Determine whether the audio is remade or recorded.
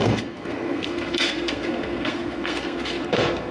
remade